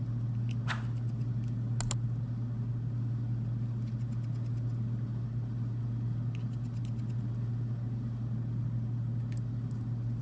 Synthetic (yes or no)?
no